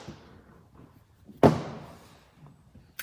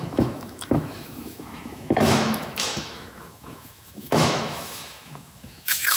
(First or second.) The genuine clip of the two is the first